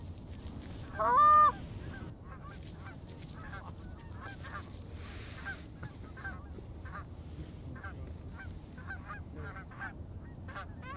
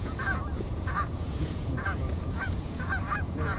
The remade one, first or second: second